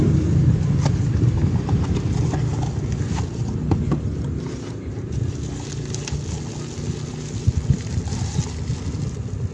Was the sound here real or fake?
real